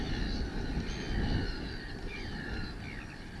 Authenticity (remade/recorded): remade